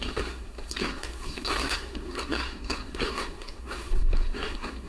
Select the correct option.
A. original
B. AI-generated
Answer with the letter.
B